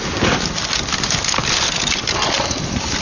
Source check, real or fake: real